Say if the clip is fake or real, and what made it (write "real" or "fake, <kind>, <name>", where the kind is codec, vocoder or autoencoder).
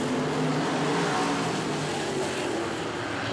real